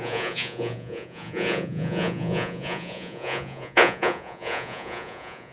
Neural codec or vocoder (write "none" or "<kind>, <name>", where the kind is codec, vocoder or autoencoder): vocoder, Vocos